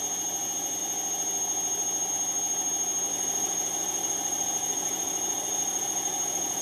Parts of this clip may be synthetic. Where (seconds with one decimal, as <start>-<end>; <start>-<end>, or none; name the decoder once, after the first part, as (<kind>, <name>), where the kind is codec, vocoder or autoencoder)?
3.1-6.6 (vocoder, Vocos)